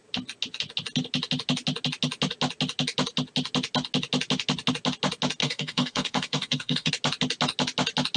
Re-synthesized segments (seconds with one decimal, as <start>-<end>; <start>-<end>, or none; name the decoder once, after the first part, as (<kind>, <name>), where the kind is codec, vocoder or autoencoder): 5.4-6.9 (codec, DAC)